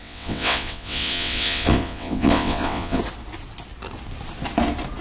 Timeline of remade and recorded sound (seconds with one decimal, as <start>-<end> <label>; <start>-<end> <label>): 0.0-3.0 remade; 3.0-5.0 recorded